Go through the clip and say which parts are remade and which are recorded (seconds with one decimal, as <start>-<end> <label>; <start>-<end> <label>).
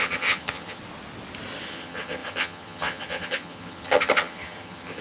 0.0-0.8 remade; 0.8-1.6 recorded; 1.6-5.0 remade